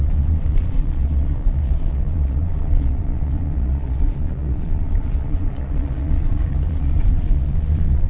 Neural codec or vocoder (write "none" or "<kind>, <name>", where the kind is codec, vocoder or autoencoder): vocoder, Vocos